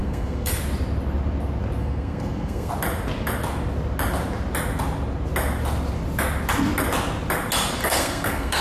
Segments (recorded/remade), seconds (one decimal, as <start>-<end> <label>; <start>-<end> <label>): 0.0-0.6 remade; 0.6-1.8 recorded; 1.8-2.7 remade; 2.7-7.8 recorded; 7.8-8.6 remade